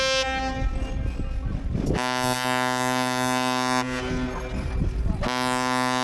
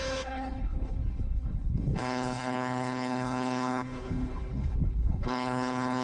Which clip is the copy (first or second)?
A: second